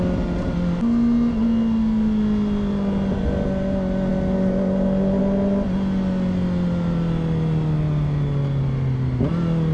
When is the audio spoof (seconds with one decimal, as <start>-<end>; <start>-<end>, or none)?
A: none